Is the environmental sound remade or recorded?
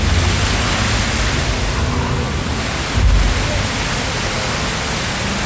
recorded